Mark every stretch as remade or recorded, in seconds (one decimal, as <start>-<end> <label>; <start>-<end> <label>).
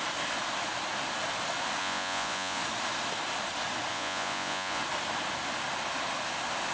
0.0-1.8 recorded; 1.8-2.6 remade; 2.6-3.9 recorded; 3.9-4.8 remade; 4.8-6.7 recorded